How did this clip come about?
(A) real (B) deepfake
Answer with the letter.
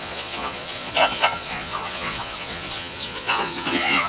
B